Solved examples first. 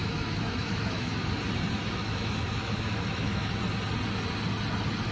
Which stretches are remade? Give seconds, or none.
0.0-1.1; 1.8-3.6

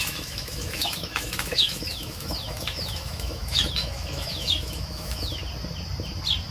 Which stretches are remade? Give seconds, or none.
0.0-5.4